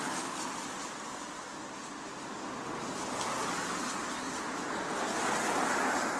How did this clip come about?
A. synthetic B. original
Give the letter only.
B